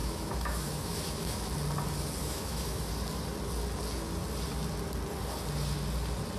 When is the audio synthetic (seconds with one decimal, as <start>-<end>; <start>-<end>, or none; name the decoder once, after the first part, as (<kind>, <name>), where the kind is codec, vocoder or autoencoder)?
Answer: 0.0-1.5 (autoencoder, DAC-VAE); 2.2-2.9